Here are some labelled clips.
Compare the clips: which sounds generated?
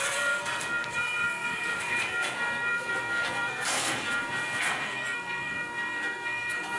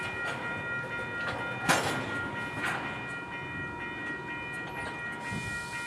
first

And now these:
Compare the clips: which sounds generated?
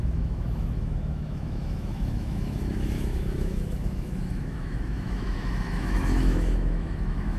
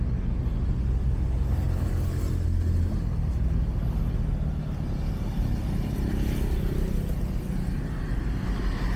first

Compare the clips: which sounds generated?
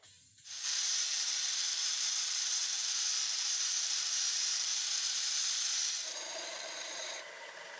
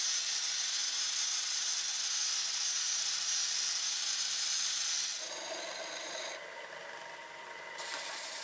first